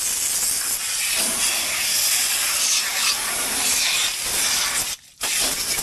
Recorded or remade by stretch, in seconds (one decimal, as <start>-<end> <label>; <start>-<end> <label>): 0.0-5.8 recorded